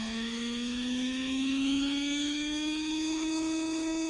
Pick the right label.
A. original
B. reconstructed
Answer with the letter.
B